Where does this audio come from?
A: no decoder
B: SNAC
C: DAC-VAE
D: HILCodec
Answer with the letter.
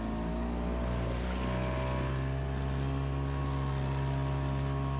A